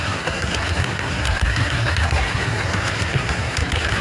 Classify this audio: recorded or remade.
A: remade